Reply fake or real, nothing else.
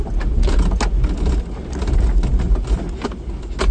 real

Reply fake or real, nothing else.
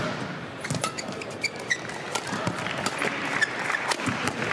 real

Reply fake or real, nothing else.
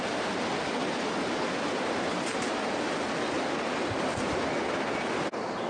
real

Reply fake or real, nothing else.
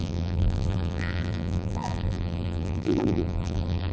fake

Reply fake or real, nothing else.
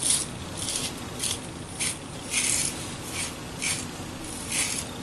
real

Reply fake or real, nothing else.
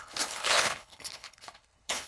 fake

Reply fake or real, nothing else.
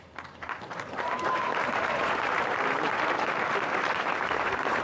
fake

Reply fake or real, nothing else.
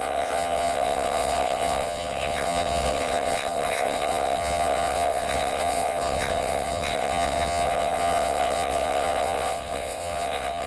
fake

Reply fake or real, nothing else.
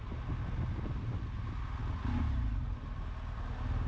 real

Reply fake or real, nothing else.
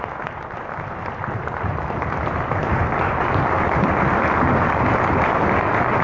real